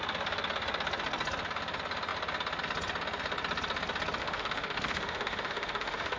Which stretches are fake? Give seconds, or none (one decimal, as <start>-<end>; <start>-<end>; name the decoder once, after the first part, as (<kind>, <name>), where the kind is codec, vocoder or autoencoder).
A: 4.2-6.2 (autoencoder, DAC-VAE)